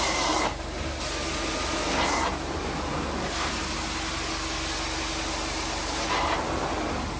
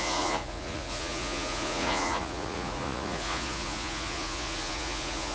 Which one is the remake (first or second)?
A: second